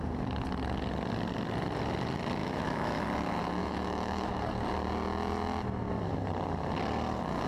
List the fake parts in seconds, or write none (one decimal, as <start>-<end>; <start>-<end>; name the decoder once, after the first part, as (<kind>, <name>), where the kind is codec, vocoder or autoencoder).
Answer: 2.4-3.0 (autoencoder, DAC-VAE); 3.6-4.4